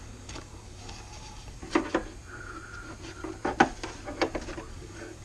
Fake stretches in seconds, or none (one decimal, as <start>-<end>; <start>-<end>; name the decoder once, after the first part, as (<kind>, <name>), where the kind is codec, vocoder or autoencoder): 0.0-1.6 (codec, DAC); 4.7-5.2